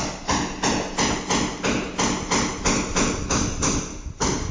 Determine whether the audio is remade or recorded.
recorded